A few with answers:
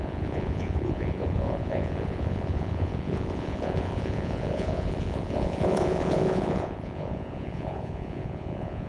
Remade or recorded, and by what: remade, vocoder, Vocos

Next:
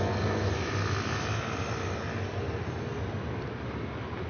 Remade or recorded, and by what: recorded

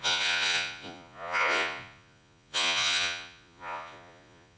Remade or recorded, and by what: remade, vocoder, Vocos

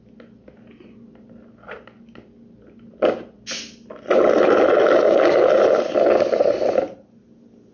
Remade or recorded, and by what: recorded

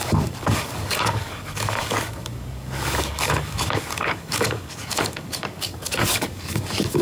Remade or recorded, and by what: remade, codec, DAC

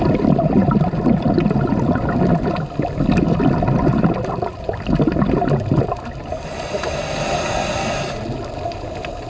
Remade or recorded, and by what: recorded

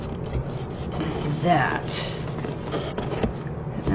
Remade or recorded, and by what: recorded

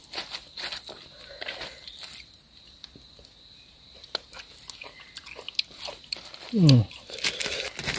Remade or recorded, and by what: recorded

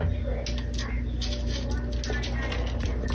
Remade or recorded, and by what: recorded